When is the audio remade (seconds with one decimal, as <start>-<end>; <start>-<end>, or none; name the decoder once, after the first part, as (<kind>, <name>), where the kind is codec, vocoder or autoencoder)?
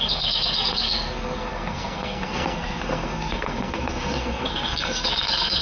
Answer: 0.0-5.6 (codec, SNAC)